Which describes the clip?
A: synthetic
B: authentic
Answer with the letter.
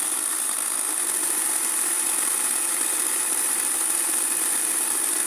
A